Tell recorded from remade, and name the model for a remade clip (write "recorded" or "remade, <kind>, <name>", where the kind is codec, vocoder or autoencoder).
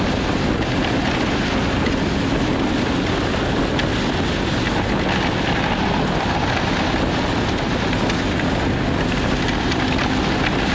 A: recorded